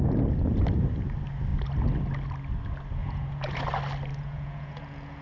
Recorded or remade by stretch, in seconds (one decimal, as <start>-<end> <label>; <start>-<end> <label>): 0.0-3.0 recorded; 3.0-3.6 remade; 3.6-4.1 recorded; 4.1-5.2 remade